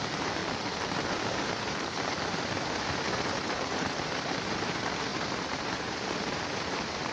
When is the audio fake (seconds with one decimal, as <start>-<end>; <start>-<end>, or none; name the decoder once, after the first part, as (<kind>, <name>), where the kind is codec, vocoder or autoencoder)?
0.0-0.4 (vocoder, BigVGAN v2); 0.9-7.1